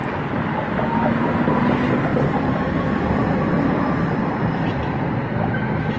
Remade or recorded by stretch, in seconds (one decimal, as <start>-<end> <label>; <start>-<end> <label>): 0.0-0.5 remade; 0.5-2.1 recorded; 2.1-5.0 remade; 5.0-6.0 recorded